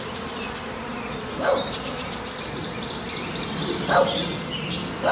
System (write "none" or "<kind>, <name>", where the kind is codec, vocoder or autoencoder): none